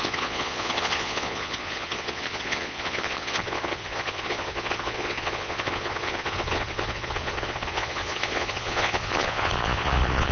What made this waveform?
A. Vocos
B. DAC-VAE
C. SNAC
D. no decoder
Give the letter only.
A